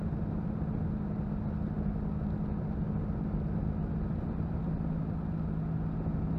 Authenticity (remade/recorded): recorded